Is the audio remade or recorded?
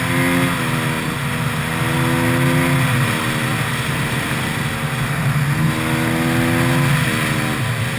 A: recorded